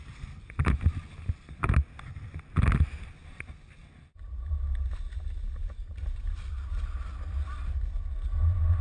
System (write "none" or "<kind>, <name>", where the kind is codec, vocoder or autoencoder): none